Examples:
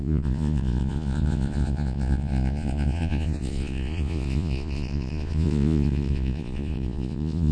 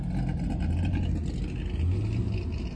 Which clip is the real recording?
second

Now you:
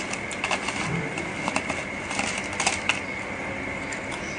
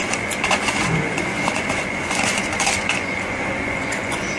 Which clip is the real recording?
first